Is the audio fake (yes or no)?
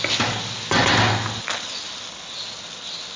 no